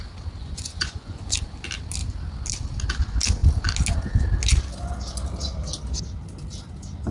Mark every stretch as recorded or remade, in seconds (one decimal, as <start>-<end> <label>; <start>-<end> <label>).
0.0-0.4 recorded; 0.4-1.2 remade; 1.2-7.1 recorded